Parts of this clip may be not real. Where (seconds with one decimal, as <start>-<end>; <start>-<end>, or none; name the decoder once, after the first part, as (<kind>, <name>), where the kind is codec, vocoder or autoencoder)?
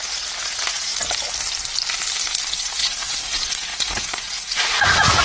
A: 0.0-0.9 (vocoder, Vocos); 2.5-5.2